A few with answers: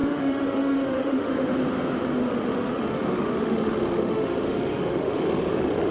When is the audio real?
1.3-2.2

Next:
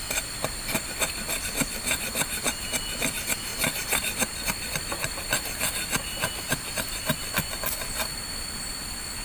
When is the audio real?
0.0-9.2

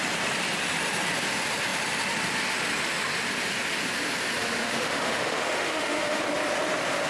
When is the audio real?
0.0-4.6; 6.2-7.1